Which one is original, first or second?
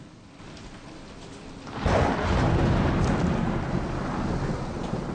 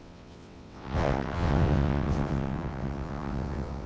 first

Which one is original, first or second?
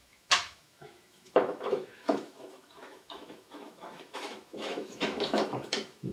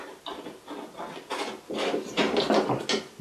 second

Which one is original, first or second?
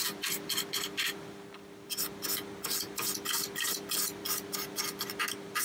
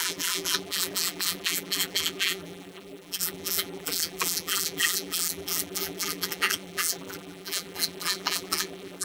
first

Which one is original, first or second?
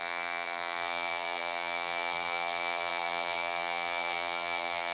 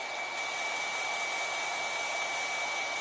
second